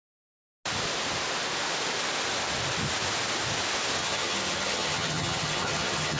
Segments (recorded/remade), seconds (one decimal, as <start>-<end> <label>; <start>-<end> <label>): 0.0-4.0 recorded; 4.0-6.2 remade